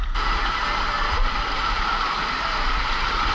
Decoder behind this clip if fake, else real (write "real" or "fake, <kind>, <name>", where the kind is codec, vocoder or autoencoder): fake, vocoder, BigVGAN v2